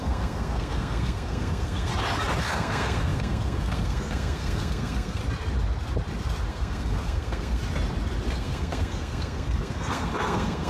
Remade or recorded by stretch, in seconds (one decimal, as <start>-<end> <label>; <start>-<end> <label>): 0.0-1.9 remade; 1.9-2.4 recorded; 2.4-5.2 remade; 5.2-6.5 recorded; 6.5-7.6 remade; 7.6-8.3 recorded; 8.3-10.7 remade